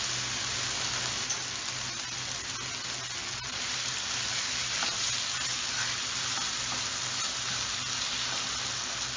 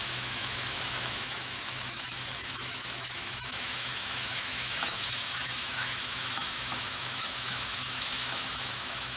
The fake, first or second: second